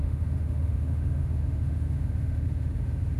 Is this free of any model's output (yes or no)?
no